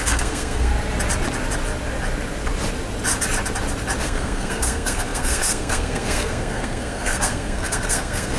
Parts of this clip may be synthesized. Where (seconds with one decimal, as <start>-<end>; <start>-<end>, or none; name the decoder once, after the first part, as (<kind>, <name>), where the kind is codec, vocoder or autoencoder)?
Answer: 0.0-0.7 (codec, SNAC); 4.0-8.4